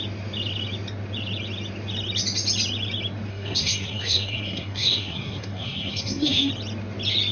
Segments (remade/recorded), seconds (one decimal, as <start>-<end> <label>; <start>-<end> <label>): 0.0-3.3 recorded; 3.3-6.5 remade; 6.5-7.3 recorded